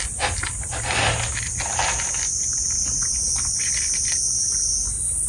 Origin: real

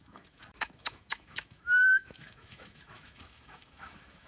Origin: fake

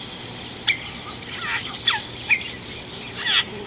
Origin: real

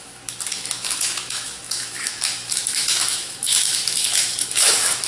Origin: fake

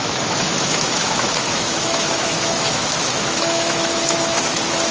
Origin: fake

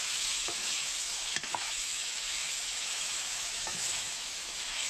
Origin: fake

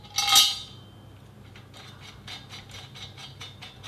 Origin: real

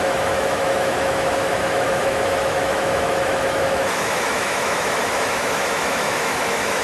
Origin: fake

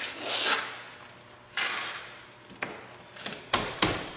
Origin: real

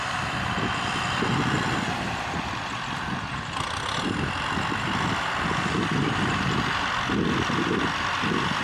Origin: real